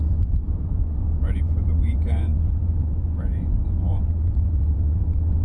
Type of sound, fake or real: fake